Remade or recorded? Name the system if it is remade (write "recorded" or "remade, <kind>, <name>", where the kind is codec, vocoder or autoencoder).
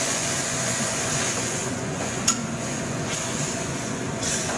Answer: remade, vocoder, Vocos